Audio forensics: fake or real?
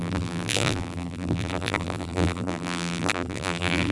fake